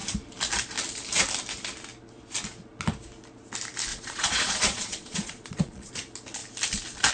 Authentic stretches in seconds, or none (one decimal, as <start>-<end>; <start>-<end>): 0.0-3.9; 5.9-7.1